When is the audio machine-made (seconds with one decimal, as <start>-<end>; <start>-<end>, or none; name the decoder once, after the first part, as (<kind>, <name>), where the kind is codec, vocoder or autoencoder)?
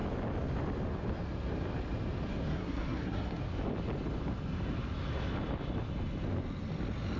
2.5-3.4 (codec, SNAC)